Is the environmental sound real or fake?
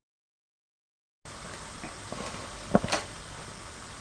real